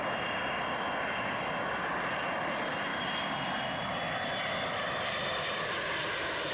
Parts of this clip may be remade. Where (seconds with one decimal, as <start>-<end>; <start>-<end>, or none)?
2.9-5.7